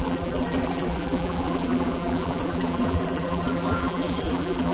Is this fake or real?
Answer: fake